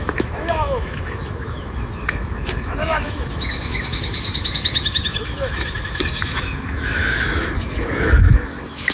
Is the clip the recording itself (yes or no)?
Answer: no